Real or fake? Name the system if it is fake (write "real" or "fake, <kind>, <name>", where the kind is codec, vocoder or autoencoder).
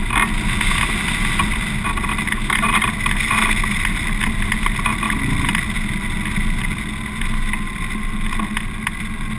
real